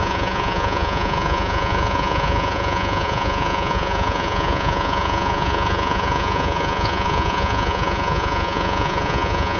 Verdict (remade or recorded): remade